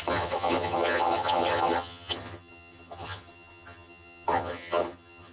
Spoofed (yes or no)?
yes